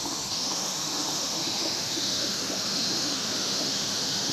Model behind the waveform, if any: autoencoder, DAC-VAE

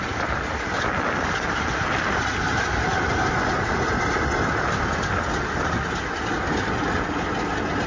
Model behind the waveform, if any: none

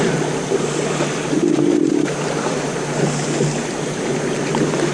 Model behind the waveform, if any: none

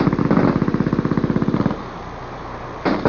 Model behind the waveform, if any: none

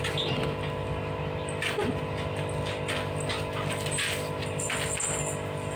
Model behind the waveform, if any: none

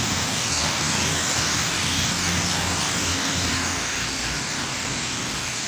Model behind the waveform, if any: codec, DAC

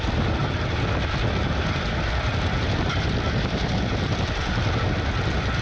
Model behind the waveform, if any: none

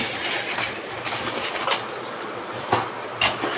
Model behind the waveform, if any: none